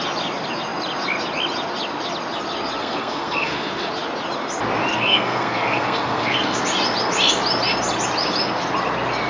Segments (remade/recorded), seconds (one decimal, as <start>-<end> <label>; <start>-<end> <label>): 0.0-2.8 recorded; 2.8-3.9 remade; 3.9-4.9 recorded; 4.9-6.6 remade; 6.6-9.3 recorded

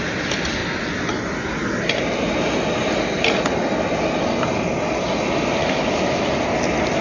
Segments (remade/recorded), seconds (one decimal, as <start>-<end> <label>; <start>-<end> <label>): 0.0-5.6 recorded; 5.6-6.3 remade; 6.3-7.0 recorded